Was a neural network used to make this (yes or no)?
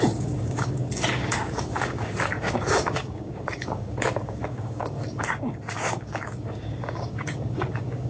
yes